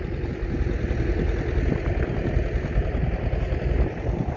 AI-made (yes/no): no